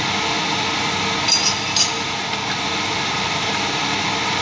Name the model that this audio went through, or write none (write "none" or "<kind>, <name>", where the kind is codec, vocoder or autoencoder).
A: none